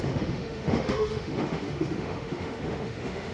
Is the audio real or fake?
fake